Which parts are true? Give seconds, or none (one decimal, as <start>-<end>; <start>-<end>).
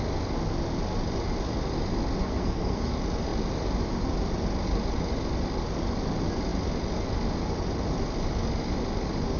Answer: 0.0-2.2; 2.9-9.4